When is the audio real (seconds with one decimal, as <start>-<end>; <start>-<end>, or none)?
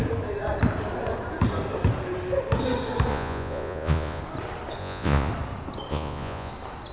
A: 0.0-3.1; 4.2-4.8; 5.3-5.9; 6.5-6.9